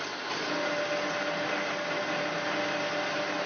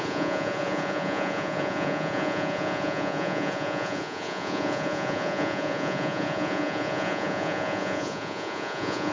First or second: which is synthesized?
second